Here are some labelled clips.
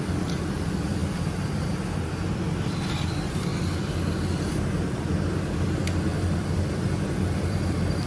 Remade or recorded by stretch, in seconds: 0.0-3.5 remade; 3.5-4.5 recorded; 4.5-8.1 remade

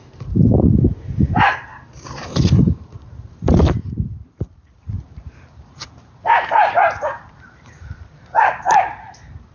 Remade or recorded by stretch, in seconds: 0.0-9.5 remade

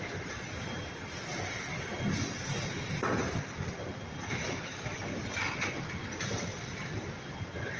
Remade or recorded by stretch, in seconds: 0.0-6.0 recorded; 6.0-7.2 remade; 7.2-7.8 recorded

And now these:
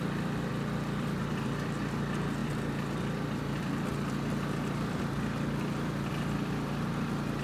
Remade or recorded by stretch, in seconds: 0.0-0.5 recorded; 0.5-1.8 remade; 1.8-2.4 recorded; 2.4-6.1 remade; 6.1-7.4 recorded

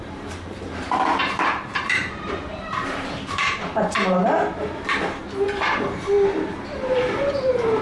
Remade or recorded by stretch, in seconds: 0.0-4.2 remade; 4.2-5.6 recorded; 5.6-7.8 remade

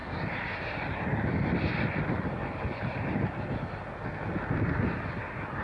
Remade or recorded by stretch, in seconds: 0.0-5.6 recorded

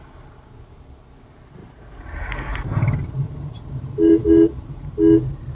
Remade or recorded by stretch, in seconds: 0.0-1.6 recorded; 1.6-4.9 remade; 4.9-5.5 recorded